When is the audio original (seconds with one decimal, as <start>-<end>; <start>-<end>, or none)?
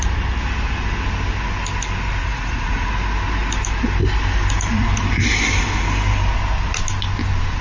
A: 0.0-2.2; 2.9-7.6